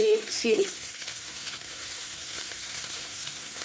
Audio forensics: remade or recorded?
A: remade